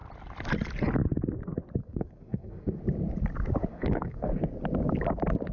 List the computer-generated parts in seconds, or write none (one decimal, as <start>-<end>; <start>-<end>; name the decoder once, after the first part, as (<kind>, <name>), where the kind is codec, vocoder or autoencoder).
1.8-2.8 (codec, SNAC); 3.7-4.3